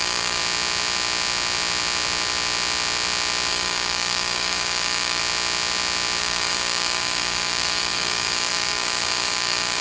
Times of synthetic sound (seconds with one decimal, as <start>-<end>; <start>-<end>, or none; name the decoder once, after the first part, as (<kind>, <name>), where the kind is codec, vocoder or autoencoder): 0.0-0.4 (codec, DAC); 3.5-5.2; 6.2-9.8